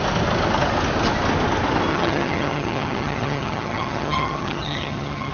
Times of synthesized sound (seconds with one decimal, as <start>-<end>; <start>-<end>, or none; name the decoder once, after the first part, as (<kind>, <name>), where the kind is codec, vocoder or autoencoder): 1.9-5.3 (vocoder, HiFi-GAN)